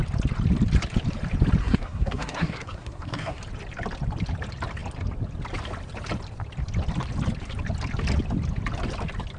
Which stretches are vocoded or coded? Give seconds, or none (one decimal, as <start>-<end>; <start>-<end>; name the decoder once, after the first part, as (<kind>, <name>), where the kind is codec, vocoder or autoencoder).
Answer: 1.6-3.4 (codec, SNAC)